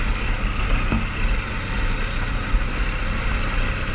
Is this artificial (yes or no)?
no